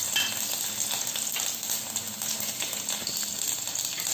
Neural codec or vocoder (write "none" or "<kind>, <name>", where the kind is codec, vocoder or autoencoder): none